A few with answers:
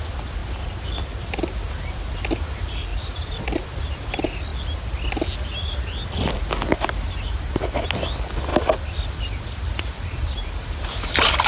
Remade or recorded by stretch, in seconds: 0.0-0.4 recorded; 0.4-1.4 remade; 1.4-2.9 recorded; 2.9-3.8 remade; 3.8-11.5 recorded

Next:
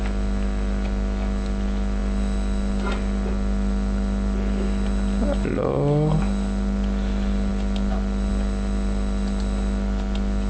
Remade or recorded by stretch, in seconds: 0.0-10.5 recorded

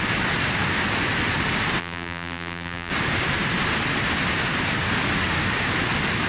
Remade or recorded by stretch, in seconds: 0.0-1.8 recorded; 1.8-2.9 remade; 2.9-6.3 recorded

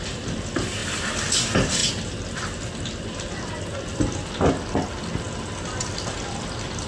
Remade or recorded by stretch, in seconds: 0.0-6.9 recorded

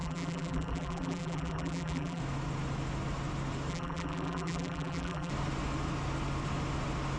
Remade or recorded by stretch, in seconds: 0.0-2.2 remade; 2.2-3.7 recorded; 3.7-5.3 remade; 5.3-7.2 recorded